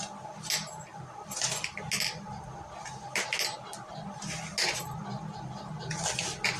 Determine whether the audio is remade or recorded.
recorded